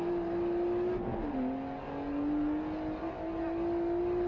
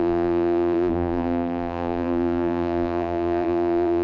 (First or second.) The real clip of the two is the first